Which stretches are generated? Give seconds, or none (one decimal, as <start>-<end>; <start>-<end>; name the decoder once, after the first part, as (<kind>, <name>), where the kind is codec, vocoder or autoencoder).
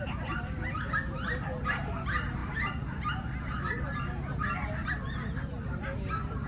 none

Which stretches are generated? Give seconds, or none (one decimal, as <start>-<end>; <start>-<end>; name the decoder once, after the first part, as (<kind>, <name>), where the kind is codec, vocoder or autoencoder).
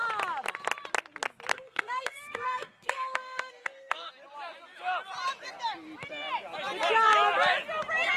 1.5-4.1 (codec, SNAC)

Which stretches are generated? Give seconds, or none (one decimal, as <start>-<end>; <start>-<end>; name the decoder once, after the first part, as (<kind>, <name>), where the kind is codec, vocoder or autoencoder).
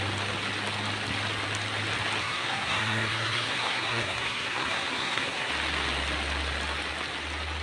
2.2-5.5 (codec, SNAC)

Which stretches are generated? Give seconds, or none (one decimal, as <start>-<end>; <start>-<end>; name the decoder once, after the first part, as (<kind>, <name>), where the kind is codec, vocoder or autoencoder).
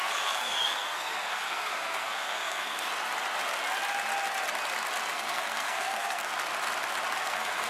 0.0-2.9 (codec, SNAC); 5.1-6.3; 7.2-7.7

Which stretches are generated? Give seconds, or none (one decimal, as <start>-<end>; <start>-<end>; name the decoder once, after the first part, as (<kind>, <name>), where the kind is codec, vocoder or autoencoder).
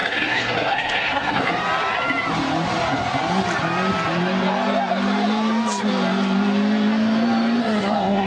0.0-1.5 (codec, SNAC); 7.6-8.3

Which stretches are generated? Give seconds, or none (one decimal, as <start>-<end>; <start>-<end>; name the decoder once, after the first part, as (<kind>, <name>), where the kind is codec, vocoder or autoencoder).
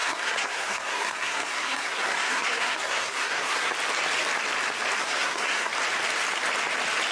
0.0-3.7 (codec, SNAC); 5.0-5.7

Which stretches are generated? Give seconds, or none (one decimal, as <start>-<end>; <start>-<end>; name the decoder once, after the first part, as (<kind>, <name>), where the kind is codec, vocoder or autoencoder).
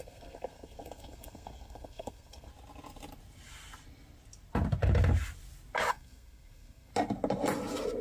0.0-2.5 (codec, SNAC); 5.9-6.9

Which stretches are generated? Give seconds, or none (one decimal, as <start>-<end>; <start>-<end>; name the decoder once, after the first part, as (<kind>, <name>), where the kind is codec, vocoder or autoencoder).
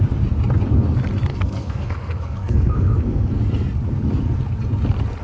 1.3-3.4 (codec, SNAC)